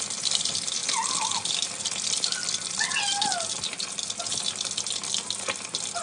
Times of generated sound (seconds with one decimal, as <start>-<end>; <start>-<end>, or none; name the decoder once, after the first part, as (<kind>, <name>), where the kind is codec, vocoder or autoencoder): none